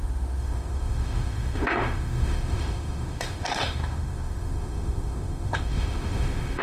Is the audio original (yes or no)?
no